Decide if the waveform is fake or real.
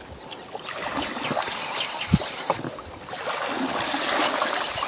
real